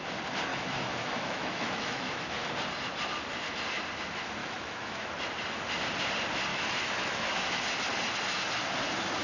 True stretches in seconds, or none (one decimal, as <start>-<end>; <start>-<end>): 0.0-0.5; 2.5-4.4; 5.0-6.5; 7.6-9.2